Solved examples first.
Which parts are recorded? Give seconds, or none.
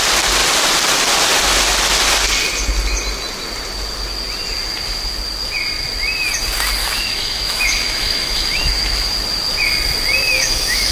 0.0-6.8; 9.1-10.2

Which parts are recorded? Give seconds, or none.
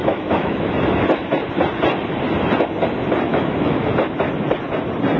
0.7-3.3; 3.9-5.2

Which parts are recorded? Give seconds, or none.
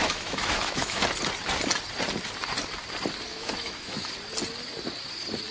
1.0-3.3; 4.1-5.5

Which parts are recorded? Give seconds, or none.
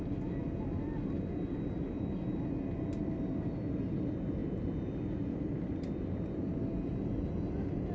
0.0-7.9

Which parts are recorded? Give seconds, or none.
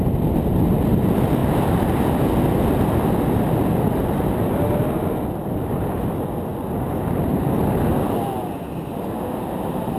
0.0-10.0